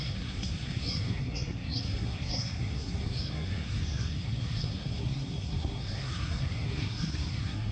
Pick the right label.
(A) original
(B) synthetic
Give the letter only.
B